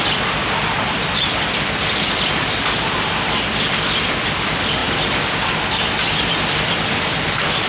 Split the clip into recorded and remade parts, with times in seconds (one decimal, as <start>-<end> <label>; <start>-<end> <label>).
0.0-7.7 remade